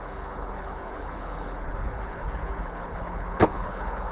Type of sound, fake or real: fake